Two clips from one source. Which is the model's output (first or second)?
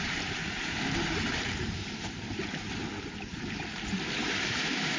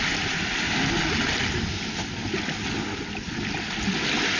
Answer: first